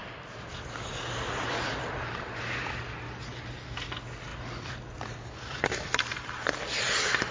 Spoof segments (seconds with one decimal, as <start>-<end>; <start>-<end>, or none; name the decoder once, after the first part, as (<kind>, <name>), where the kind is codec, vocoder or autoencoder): 0.0-2.4 (vocoder, BigVGAN v2); 4.3-6.6